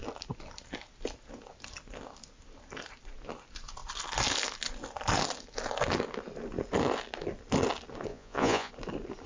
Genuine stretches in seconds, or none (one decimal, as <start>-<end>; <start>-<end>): 0.0-8.1; 8.7-9.3